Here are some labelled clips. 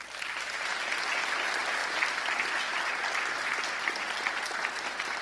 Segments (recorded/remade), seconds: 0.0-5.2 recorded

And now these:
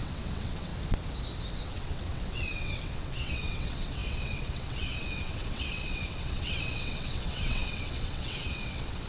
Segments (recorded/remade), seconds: 0.0-0.7 remade; 0.7-1.6 recorded; 1.6-9.1 remade

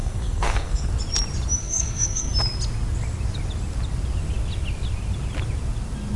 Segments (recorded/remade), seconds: 0.0-0.9 remade; 0.9-1.6 recorded; 1.6-2.3 remade; 2.3-6.2 recorded